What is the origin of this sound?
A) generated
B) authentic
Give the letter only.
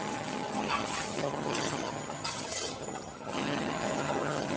A